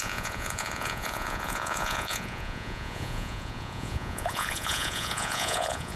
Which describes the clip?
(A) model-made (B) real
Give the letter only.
A